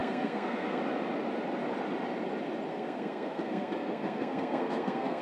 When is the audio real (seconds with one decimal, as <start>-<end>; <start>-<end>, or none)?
0.8-2.7